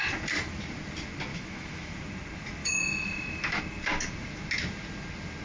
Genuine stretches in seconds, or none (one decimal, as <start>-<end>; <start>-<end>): 0.0-1.3; 1.9-2.6; 3.6-5.4